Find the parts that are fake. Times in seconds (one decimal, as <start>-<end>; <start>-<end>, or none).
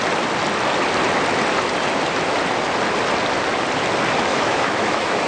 4.3-5.3